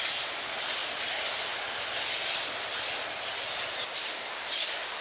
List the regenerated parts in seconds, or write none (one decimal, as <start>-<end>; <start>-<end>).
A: none